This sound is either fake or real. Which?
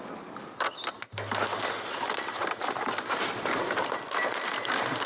real